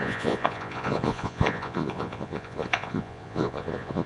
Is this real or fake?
fake